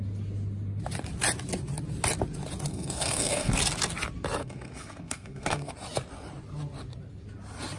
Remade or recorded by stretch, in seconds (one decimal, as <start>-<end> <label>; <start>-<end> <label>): 0.0-2.7 recorded; 2.7-3.5 remade; 3.5-4.4 recorded; 4.4-5.7 remade; 5.7-7.8 recorded